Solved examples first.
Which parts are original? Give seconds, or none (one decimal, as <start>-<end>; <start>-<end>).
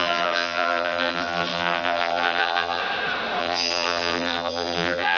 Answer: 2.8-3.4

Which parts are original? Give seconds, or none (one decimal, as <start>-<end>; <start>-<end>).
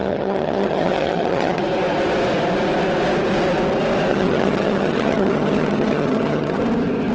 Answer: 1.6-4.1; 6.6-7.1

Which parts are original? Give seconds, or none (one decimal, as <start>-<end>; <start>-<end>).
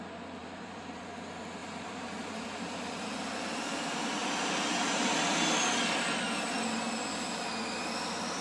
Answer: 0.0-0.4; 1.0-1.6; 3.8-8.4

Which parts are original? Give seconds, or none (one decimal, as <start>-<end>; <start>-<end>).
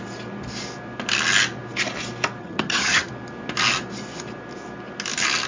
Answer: 0.0-2.4; 3.1-5.5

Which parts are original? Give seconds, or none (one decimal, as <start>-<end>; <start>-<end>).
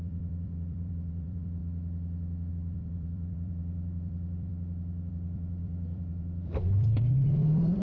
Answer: 1.6-2.5; 4.5-5.1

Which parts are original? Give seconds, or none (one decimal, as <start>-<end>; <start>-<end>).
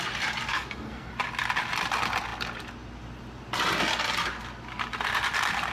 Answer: 0.0-0.5; 1.1-5.7